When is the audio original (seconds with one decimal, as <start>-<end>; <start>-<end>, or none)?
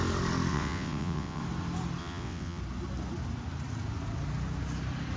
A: 0.0-0.5; 1.4-2.0; 2.6-5.2